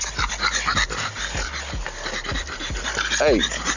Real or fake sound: real